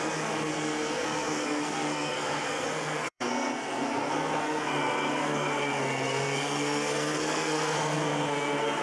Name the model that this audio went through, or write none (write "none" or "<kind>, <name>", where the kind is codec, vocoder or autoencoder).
codec, SNAC